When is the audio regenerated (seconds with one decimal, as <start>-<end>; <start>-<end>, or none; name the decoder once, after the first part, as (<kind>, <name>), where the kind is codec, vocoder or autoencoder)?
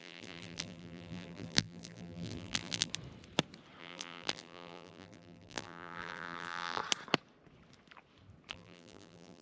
0.0-2.9 (vocoder, BigVGAN v2); 3.8-6.8; 8.5-9.4